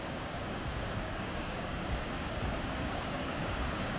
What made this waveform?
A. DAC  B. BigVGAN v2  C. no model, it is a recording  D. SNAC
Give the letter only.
A